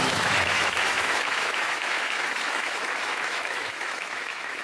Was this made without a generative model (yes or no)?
no